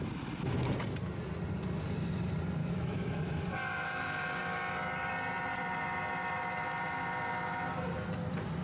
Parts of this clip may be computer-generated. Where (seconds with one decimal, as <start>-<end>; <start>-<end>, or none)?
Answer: 2.6-4.0